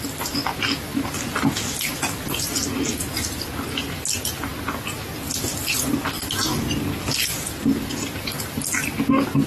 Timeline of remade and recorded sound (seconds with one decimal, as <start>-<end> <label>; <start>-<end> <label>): 0.0-0.9 recorded; 0.9-1.8 remade; 1.8-9.5 recorded